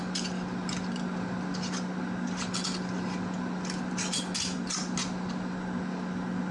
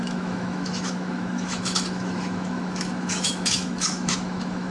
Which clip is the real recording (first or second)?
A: first